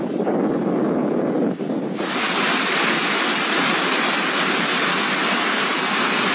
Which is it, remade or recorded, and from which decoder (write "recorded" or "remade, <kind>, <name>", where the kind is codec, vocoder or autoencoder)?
recorded